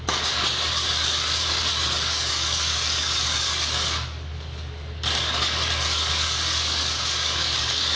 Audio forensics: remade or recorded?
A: remade